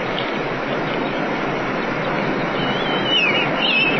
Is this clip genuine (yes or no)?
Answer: yes